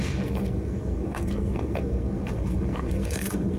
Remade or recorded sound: remade